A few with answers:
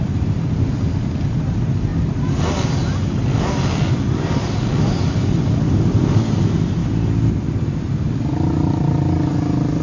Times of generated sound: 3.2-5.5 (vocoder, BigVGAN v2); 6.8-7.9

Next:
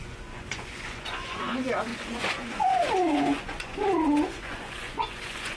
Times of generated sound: 0.0-5.6 (vocoder, Vocos)

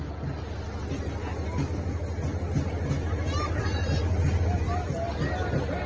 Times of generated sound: 2.3-4.0 (vocoder, BigVGAN v2)

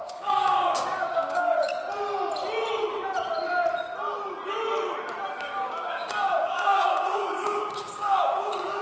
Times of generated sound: 0.0-1.7 (codec, DAC); 5.3-8.8

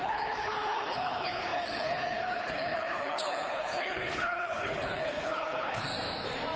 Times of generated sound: 0.0-5.9 (codec, HILCodec)

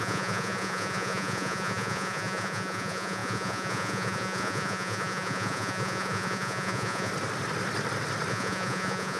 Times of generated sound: 0.0-7.1 (vocoder, Vocos); 8.3-9.2

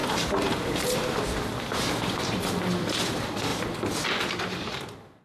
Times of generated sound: none

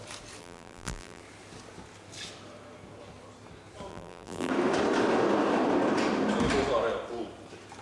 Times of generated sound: 0.4-1.2 (vocoder, BigVGAN v2); 3.9-4.5